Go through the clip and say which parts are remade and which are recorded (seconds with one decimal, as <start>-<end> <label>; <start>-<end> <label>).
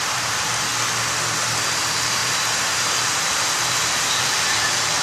0.0-0.7 remade; 0.7-1.7 recorded; 1.7-5.0 remade